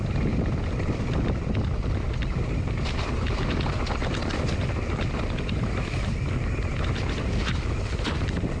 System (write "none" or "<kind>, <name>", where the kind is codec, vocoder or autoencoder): none